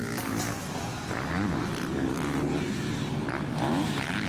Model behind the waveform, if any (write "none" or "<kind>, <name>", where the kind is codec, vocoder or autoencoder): none